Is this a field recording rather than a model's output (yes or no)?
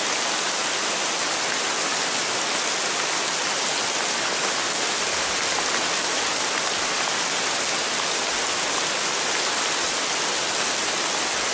yes